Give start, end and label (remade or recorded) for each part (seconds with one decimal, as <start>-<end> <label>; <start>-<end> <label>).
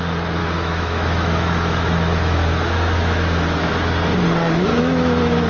0.0-0.4 recorded; 0.4-3.7 remade; 3.7-4.7 recorded; 4.7-5.5 remade